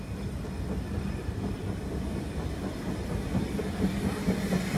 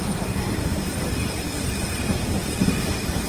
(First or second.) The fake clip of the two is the second